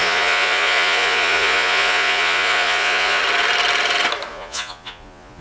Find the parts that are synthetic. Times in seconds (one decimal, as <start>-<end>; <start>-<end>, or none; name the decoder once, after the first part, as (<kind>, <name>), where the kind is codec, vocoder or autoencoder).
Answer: 0.0-3.2 (vocoder, Vocos); 4.3-5.4